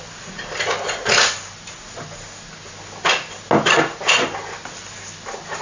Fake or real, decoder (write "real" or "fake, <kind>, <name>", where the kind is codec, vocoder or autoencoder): real